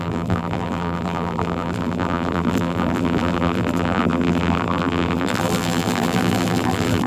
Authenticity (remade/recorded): remade